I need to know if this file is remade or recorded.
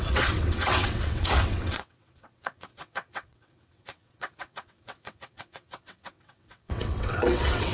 remade